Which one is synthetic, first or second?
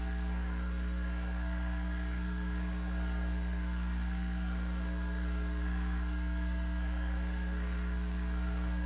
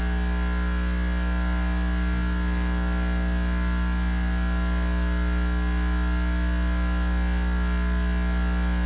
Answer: first